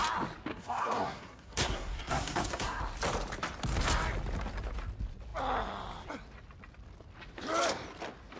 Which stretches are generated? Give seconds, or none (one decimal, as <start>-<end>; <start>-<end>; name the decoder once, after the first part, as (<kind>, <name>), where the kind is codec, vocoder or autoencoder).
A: 0.5-2.8 (codec, SNAC)